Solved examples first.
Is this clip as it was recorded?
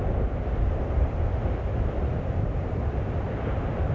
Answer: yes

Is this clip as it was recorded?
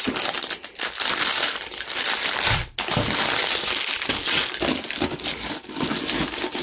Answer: yes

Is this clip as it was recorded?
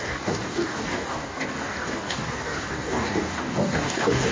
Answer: no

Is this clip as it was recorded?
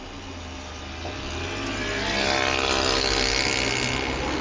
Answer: yes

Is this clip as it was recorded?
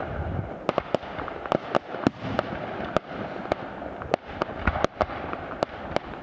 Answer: yes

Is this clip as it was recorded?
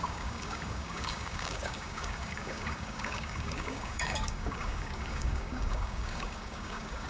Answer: no